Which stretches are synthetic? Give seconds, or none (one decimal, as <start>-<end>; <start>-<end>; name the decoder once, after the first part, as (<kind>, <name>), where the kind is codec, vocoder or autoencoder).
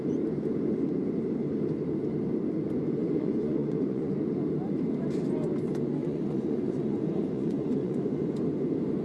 3.0-4.1 (vocoder, Vocos); 6.0-8.3